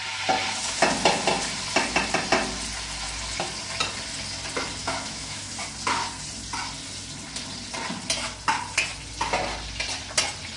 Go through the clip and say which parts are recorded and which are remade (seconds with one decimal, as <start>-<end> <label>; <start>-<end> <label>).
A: 0.0-4.8 recorded; 4.8-5.5 remade; 5.5-10.6 recorded